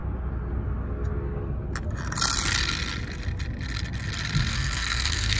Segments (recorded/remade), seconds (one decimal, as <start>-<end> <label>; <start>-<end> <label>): 0.0-4.5 recorded; 4.5-5.4 remade